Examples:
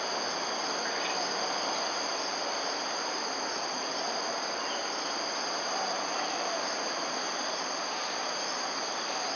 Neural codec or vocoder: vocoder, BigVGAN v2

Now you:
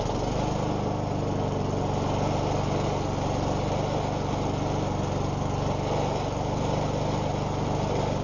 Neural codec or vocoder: none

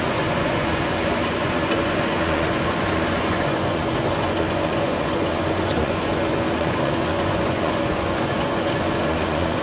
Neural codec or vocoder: vocoder, Vocos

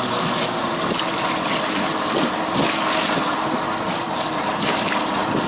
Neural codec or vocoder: none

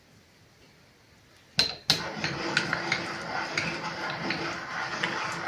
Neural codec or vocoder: none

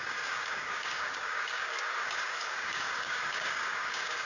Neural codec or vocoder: codec, DAC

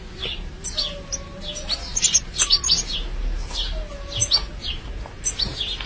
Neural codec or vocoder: none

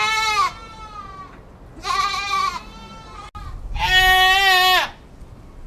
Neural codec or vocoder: none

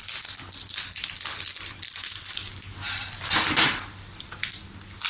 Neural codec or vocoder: vocoder, BigVGAN v2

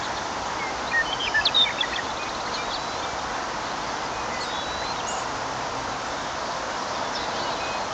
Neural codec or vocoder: none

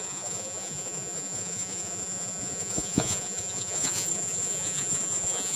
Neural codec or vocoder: vocoder, Vocos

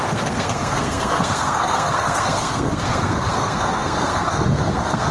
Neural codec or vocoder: codec, SNAC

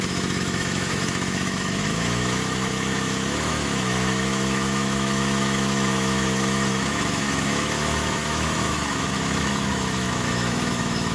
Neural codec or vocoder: autoencoder, DAC-VAE